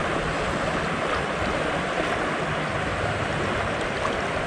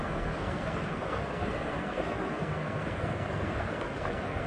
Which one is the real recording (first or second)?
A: first